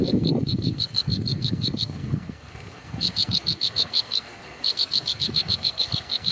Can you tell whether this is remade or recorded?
remade